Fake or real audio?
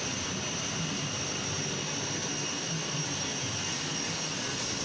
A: real